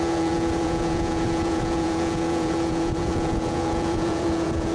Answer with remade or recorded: remade